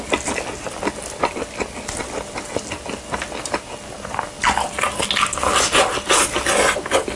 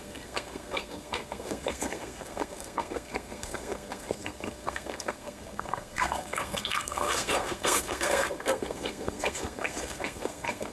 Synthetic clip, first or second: second